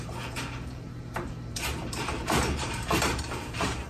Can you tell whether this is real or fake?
fake